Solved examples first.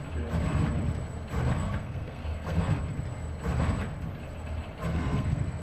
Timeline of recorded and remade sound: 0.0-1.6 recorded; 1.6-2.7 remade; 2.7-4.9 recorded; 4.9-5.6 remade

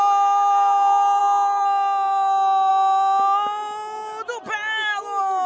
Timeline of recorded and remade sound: 0.0-5.5 recorded

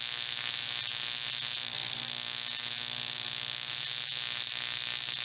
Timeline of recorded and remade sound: 0.0-5.2 recorded

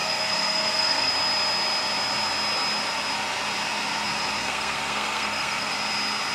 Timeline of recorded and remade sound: 0.0-1.1 remade; 1.1-4.4 recorded; 4.4-5.7 remade; 5.7-6.3 recorded